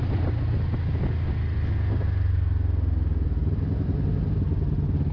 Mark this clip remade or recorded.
recorded